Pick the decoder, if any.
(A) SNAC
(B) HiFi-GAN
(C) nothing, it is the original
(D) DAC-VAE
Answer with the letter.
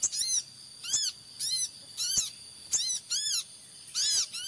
C